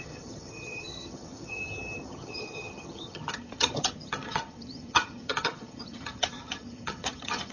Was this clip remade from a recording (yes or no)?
yes